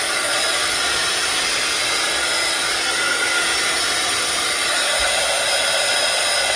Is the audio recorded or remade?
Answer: recorded